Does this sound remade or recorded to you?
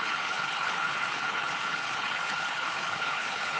remade